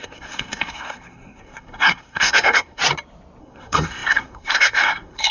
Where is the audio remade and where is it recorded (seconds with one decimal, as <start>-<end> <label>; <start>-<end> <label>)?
0.0-2.8 remade; 2.8-3.4 recorded; 3.4-5.3 remade